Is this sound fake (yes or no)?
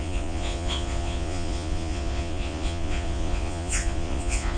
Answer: yes